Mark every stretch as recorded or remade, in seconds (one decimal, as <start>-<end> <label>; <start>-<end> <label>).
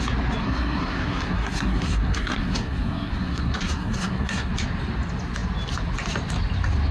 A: 0.0-0.4 recorded; 0.4-4.5 remade; 4.5-6.9 recorded